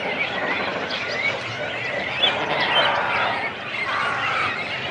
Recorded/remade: recorded